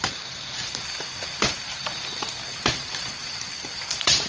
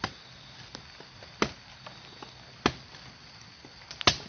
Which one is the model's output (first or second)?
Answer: first